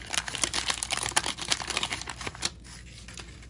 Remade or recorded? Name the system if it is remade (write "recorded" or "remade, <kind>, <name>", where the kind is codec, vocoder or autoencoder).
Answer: recorded